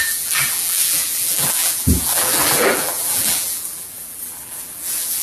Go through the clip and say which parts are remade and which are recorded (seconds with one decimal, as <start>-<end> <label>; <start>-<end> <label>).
0.0-5.2 remade